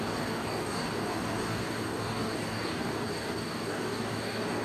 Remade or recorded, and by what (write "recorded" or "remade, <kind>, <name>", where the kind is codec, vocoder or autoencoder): remade, codec, DAC